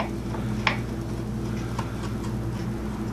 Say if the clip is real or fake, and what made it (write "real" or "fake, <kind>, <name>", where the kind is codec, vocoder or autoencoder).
real